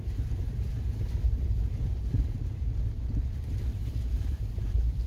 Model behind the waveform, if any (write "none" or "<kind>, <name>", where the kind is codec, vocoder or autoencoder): vocoder, BigVGAN v2